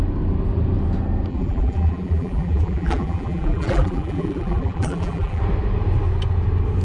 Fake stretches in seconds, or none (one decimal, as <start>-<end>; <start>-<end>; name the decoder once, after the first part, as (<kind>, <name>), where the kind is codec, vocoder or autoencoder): 1.3-5.4 (vocoder, BigVGAN v2)